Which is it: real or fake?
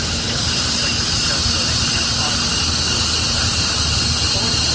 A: real